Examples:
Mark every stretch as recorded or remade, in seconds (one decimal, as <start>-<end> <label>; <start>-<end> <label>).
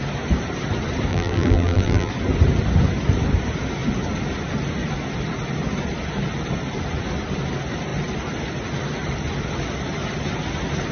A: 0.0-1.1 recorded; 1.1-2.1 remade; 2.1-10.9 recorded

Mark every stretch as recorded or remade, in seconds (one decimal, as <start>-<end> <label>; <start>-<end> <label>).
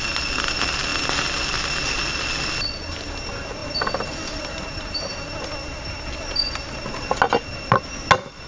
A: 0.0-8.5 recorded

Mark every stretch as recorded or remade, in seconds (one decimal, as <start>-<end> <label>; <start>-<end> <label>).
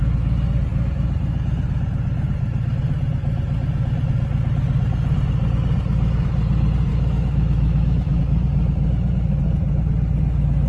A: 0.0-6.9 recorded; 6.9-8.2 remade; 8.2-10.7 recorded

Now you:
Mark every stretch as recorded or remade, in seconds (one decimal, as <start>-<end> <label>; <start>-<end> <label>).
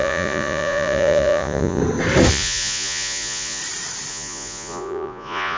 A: 0.0-1.8 remade; 1.8-2.3 recorded; 2.3-3.6 remade; 3.6-4.1 recorded; 4.1-5.6 remade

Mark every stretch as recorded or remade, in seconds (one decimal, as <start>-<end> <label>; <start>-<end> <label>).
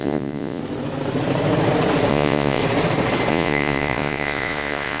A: 0.0-0.6 remade; 0.6-2.1 recorded; 2.1-2.6 remade; 2.6-3.3 recorded; 3.3-5.0 remade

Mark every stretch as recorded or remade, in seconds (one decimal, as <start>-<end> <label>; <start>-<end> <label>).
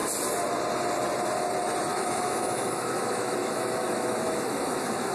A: 0.0-1.9 recorded; 1.9-5.1 remade